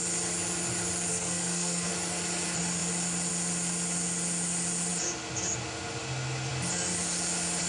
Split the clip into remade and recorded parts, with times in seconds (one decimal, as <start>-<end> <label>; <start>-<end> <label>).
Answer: 0.0-1.1 recorded; 1.1-1.9 remade; 1.9-7.7 recorded